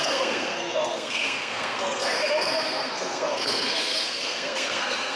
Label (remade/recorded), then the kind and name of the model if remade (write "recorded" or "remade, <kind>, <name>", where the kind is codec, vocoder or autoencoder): remade, codec, SNAC